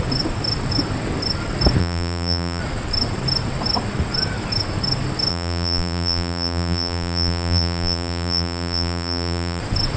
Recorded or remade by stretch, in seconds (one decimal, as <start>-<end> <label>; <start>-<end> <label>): 0.0-1.8 recorded; 1.8-2.6 remade; 2.6-5.3 recorded; 5.3-9.6 remade; 9.6-10.0 recorded